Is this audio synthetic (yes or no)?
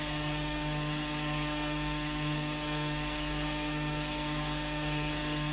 yes